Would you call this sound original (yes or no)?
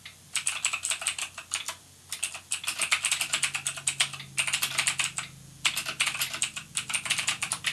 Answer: yes